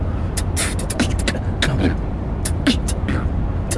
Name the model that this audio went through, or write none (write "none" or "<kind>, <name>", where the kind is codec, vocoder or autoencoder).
none